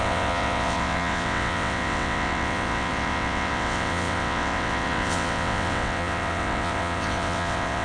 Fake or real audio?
fake